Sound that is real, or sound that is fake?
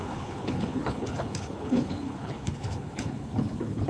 fake